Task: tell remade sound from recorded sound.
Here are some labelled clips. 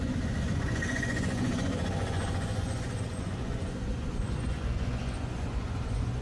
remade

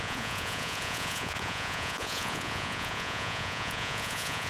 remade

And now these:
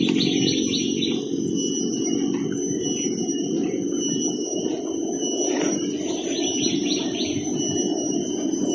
recorded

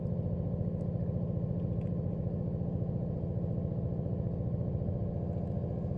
recorded